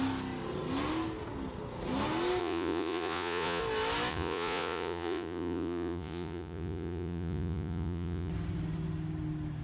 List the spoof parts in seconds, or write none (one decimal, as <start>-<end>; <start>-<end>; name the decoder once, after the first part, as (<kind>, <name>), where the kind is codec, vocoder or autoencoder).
2.4-3.6 (vocoder, Vocos); 4.1-8.3